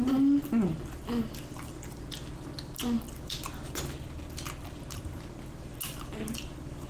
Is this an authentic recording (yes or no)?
yes